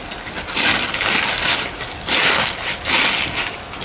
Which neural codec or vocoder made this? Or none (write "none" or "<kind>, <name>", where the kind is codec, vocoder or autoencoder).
none